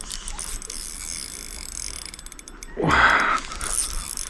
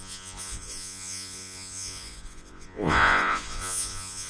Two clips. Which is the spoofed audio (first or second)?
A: second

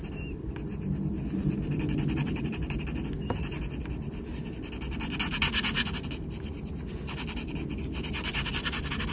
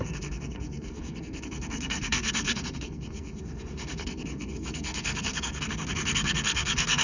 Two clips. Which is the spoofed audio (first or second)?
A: second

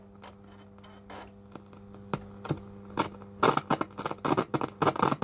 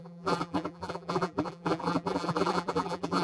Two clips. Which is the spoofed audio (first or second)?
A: second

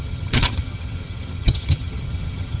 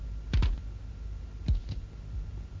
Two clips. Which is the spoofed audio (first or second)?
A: first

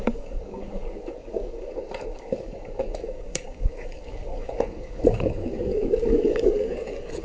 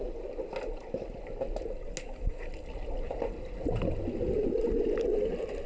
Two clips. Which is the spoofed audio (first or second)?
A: first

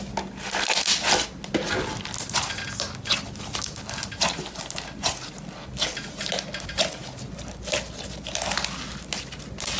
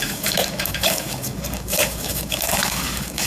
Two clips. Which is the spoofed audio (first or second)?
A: second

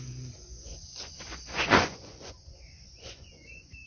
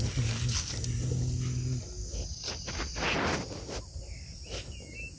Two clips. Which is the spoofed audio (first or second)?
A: first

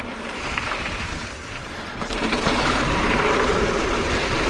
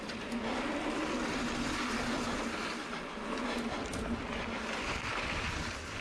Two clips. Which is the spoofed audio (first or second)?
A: first